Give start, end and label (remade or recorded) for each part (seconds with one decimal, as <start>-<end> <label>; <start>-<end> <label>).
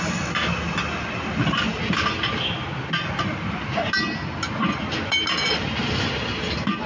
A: 0.0-6.9 recorded